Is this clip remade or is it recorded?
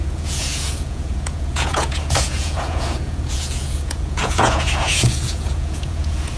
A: remade